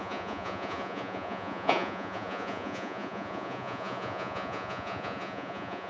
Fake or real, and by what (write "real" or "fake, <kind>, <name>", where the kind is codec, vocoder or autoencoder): fake, vocoder, Vocos